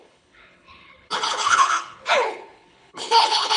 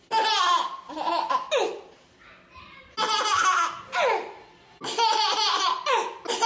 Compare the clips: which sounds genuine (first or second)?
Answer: second